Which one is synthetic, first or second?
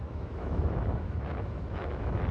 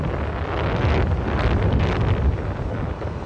first